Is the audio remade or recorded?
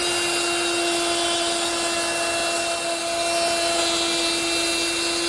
recorded